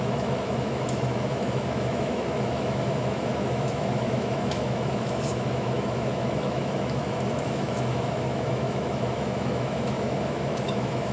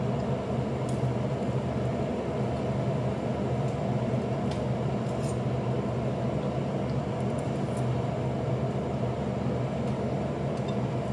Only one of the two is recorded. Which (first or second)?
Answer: second